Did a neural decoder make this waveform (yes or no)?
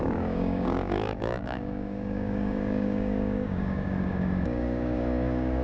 yes